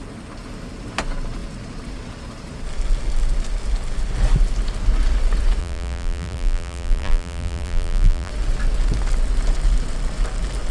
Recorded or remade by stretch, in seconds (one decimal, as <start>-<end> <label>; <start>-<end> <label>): 0.0-5.6 recorded; 5.6-8.3 remade; 8.3-10.7 recorded